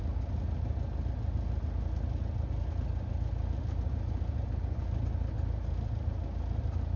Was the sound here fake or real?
real